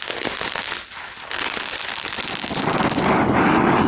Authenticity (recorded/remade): recorded